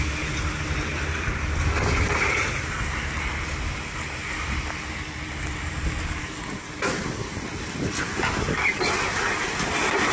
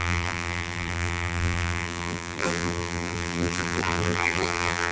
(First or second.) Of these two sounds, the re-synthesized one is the second